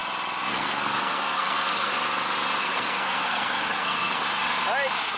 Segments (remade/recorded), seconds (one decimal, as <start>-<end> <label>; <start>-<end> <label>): 0.0-0.5 recorded; 0.5-1.9 remade; 1.9-2.6 recorded; 2.6-4.2 remade; 4.2-5.2 recorded